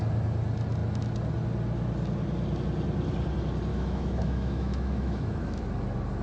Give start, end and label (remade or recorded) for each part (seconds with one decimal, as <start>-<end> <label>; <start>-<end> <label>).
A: 0.0-3.7 recorded; 3.7-5.6 remade; 5.6-6.2 recorded